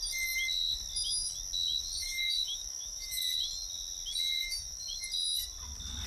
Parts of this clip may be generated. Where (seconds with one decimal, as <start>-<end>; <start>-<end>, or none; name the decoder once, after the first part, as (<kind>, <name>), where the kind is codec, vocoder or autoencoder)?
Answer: 2.0-3.2 (autoencoder, DAC-VAE); 4.4-5.0

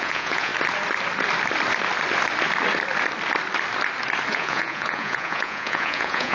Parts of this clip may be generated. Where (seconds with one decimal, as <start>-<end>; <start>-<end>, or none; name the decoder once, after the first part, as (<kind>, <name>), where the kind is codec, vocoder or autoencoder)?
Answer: 0.0-0.5 (vocoder, Vocos); 4.3-6.3

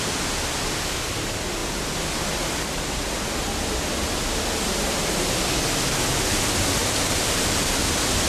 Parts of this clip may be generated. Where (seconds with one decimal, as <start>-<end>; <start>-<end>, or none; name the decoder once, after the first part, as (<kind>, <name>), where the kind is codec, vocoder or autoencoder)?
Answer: 6.8-7.8 (vocoder, BigVGAN v2)

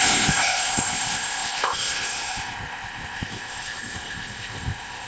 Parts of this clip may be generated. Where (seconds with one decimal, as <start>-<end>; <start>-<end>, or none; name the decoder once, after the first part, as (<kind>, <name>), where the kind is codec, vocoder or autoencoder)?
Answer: 0.0-5.1 (codec, ZipCodec)